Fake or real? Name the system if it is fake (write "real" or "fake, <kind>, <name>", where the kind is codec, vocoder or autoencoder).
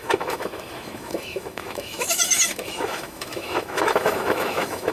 fake, autoencoder, DAC-VAE